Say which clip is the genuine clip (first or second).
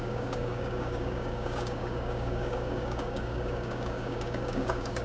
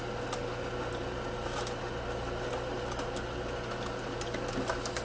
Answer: second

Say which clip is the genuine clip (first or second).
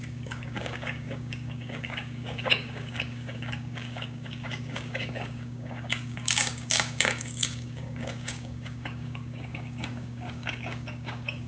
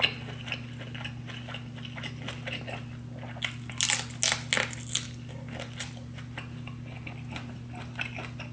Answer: second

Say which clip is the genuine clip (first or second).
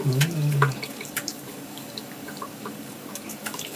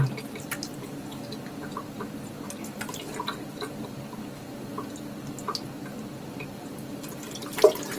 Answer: second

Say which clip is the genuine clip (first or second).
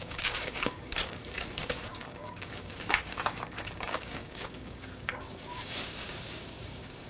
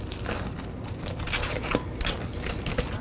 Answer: second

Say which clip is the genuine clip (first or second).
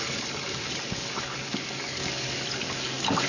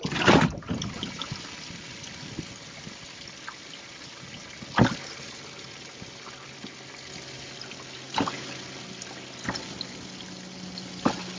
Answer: second